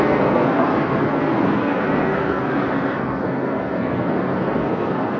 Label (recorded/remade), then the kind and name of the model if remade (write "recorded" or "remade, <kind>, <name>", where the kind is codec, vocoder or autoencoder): remade, codec, SNAC